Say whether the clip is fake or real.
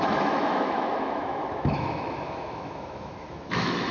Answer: fake